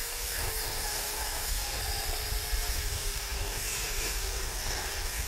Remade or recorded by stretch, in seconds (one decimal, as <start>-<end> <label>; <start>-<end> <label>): 0.0-1.8 remade; 1.8-2.7 recorded; 2.7-5.3 remade